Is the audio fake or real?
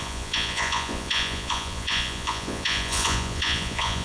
fake